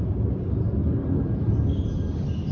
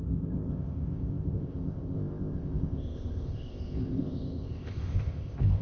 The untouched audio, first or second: first